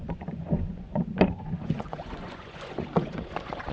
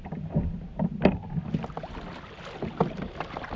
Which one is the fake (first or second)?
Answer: first